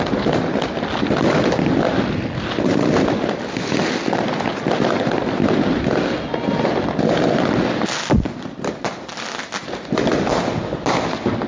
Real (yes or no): yes